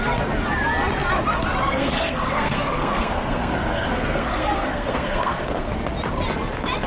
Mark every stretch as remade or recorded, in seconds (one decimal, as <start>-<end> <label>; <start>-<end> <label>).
0.0-1.6 recorded; 1.6-5.7 remade; 5.7-6.9 recorded